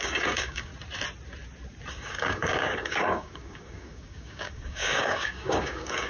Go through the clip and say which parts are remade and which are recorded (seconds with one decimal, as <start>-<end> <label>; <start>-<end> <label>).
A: 0.0-0.7 remade; 0.7-1.9 recorded; 1.9-6.1 remade